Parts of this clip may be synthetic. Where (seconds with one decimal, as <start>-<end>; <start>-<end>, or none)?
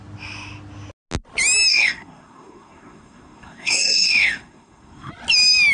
1.7-5.1